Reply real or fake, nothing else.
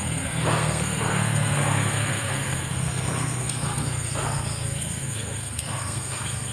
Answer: fake